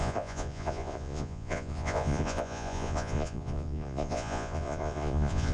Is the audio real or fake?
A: fake